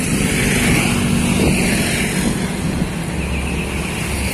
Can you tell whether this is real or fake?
real